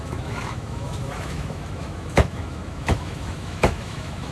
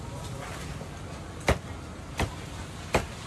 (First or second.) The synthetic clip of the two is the first